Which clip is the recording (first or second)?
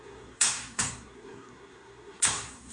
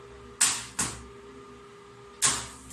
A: second